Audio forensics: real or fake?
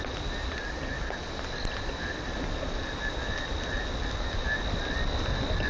real